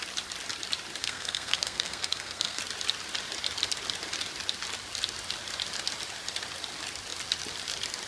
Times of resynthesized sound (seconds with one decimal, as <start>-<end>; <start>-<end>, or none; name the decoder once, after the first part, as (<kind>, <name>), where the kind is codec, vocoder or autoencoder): 1.0-2.6 (codec, SNAC)